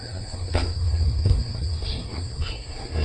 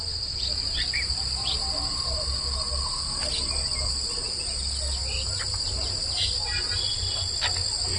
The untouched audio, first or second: second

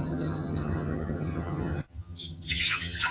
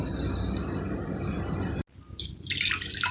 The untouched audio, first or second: second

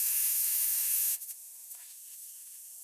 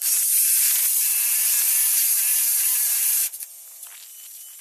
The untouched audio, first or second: second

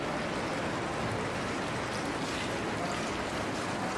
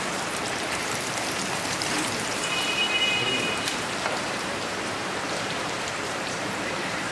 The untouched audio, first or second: first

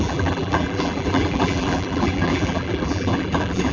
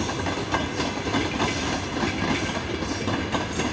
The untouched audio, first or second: second